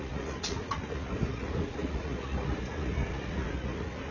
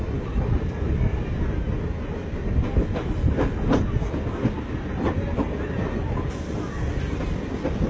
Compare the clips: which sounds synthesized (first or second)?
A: first